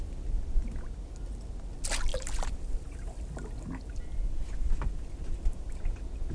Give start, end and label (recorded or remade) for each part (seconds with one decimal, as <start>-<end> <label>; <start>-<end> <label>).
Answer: 0.0-2.1 recorded; 2.1-6.3 remade